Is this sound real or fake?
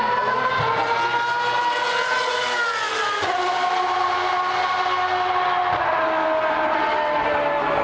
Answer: real